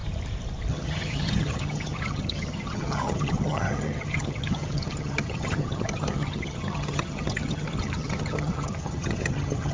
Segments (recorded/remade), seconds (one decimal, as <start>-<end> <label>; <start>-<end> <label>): 0.0-0.7 recorded; 0.7-9.7 remade